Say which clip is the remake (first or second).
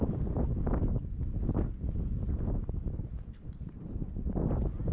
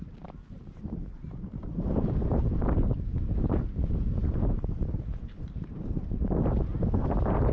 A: second